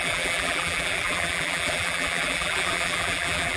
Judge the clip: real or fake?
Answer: fake